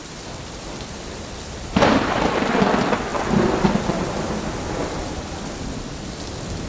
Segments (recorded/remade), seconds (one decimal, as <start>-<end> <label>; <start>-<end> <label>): 0.0-1.8 remade; 1.8-5.6 recorded; 5.6-6.2 remade; 6.2-6.7 recorded

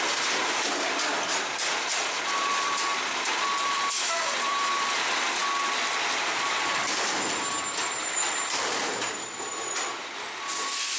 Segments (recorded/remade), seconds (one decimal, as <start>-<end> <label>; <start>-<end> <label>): 0.0-5.4 remade; 5.4-6.1 recorded; 6.1-11.0 remade

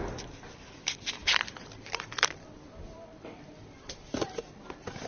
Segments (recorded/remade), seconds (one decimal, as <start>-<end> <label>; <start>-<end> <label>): 0.0-1.2 recorded; 1.2-4.3 remade; 4.3-5.1 recorded

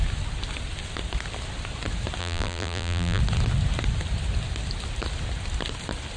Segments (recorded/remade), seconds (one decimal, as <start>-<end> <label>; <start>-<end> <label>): 0.0-2.2 recorded; 2.2-3.2 remade; 3.2-6.2 recorded

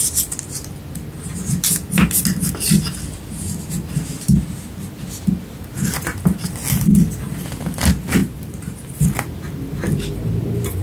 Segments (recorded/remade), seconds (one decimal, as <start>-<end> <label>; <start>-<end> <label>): 0.0-8.2 recorded; 8.2-9.0 remade; 9.0-10.8 recorded

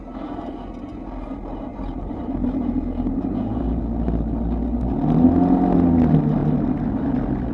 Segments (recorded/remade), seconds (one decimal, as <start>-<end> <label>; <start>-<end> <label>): 0.0-0.9 recorded; 0.9-3.8 remade; 3.8-7.5 recorded

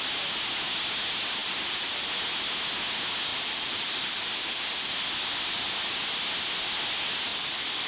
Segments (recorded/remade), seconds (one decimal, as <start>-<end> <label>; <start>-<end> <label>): 0.0-1.4 recorded; 1.4-2.1 remade; 2.1-3.3 recorded; 3.3-4.9 remade; 4.9-7.3 recorded; 7.3-7.9 remade